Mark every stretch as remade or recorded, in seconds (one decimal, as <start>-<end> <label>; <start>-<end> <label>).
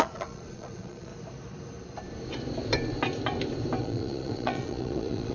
0.0-1.1 remade; 1.1-3.8 recorded; 3.8-5.3 remade